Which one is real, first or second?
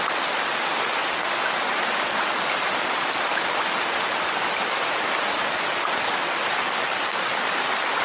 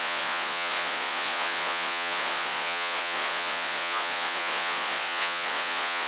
first